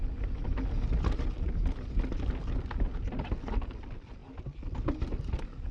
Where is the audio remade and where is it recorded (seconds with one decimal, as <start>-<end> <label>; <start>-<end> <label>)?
0.0-5.7 recorded